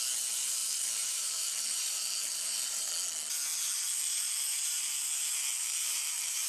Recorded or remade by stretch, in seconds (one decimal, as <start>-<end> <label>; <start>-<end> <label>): 0.0-0.6 recorded; 0.6-2.9 remade; 2.9-3.5 recorded; 3.5-4.4 remade; 4.4-5.5 recorded; 5.5-6.5 remade

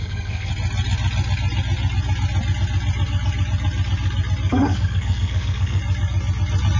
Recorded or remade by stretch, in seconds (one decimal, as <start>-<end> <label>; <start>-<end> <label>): 0.0-0.5 remade; 0.5-4.5 recorded; 4.5-5.8 remade; 5.8-6.8 recorded

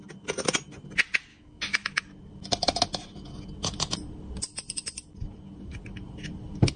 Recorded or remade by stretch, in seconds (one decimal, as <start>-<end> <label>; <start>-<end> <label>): 0.0-1.3 recorded; 1.3-2.0 remade; 2.0-6.8 recorded

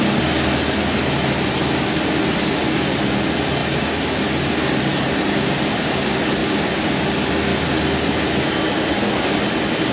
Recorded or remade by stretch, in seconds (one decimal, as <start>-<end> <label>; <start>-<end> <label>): 0.0-9.9 recorded